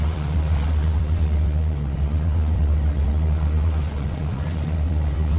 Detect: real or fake fake